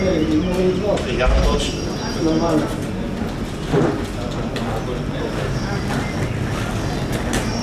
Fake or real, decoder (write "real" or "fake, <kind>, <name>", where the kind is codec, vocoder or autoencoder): real